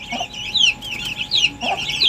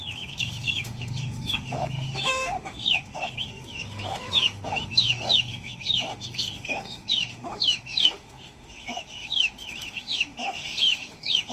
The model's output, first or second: second